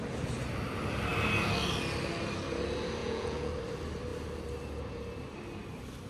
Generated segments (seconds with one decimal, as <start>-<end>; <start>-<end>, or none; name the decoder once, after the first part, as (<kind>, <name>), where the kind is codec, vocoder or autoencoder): 3.0-3.5 (vocoder, Vocos)